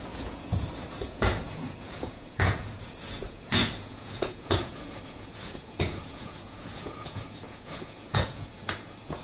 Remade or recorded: remade